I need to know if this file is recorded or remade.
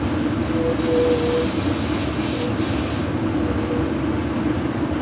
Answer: recorded